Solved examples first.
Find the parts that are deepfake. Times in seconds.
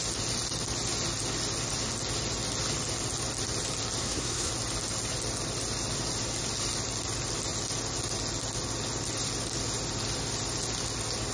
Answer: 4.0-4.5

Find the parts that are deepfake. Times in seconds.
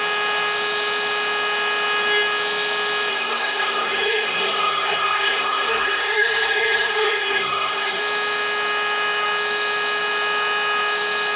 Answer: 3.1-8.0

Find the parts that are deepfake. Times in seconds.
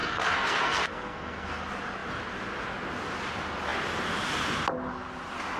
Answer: 0.0-1.6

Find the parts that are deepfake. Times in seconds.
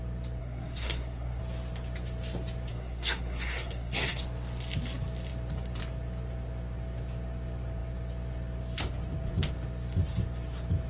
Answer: 0.4-1.4; 2.7-4.2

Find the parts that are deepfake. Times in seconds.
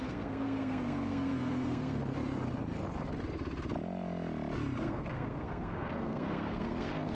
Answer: 0.0-2.0; 4.8-7.1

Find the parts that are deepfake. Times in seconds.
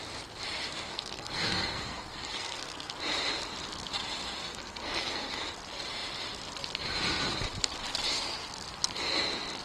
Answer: 0.9-2.9; 4.4-5.4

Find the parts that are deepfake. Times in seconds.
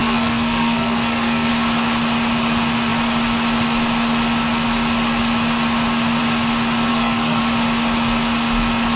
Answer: 0.0-1.5; 6.9-7.4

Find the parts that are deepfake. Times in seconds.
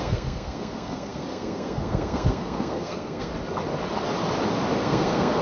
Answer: 0.0-3.3; 4.8-5.4